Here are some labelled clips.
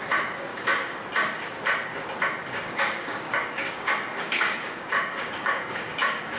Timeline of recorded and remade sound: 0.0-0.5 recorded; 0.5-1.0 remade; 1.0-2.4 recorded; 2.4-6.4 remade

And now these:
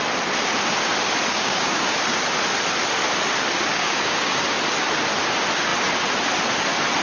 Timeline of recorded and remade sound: 0.0-1.3 recorded; 1.3-1.9 remade; 1.9-3.7 recorded; 3.7-4.4 remade; 4.4-7.0 recorded

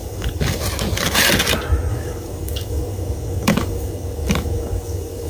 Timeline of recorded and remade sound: 0.0-0.6 remade; 0.6-1.9 recorded; 1.9-5.3 remade

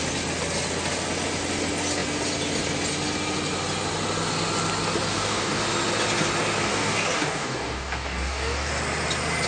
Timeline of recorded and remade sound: 0.0-5.1 recorded; 5.1-5.6 remade; 5.6-6.7 recorded; 6.7-8.7 remade; 8.7-9.5 recorded

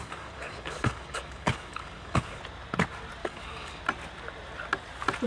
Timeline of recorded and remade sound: 0.0-2.4 remade; 2.4-3.2 recorded; 3.2-3.8 remade; 3.8-5.3 recorded